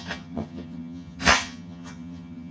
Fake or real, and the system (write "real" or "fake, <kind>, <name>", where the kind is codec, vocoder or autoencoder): fake, vocoder, HiFi-GAN